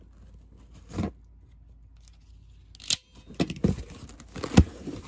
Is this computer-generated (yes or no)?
no